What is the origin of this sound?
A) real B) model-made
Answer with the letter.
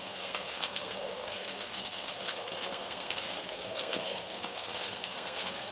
B